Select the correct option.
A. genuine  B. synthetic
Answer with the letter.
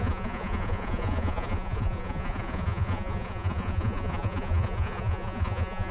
B